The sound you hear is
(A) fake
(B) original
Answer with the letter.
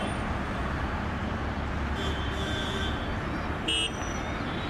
B